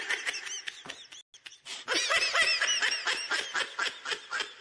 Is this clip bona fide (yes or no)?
yes